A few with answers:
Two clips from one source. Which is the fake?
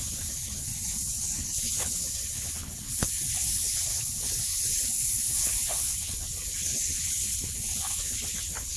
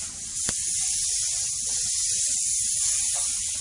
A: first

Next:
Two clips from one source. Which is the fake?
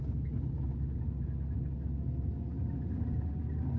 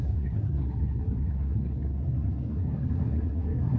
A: second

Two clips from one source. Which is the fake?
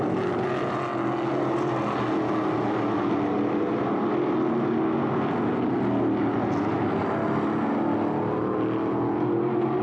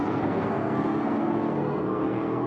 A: second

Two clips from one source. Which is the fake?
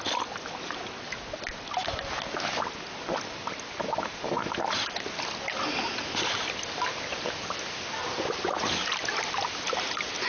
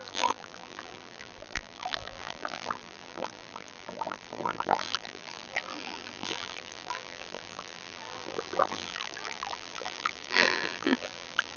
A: second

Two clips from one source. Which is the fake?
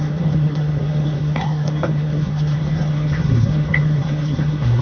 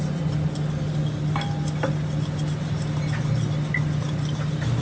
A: first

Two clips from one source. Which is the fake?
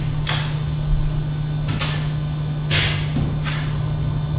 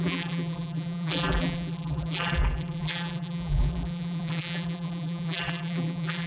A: second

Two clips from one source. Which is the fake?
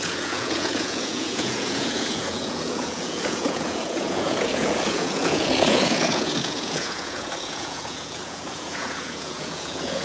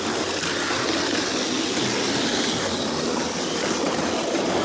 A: first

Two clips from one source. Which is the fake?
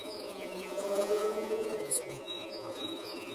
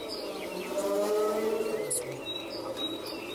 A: first